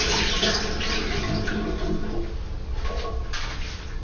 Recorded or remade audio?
recorded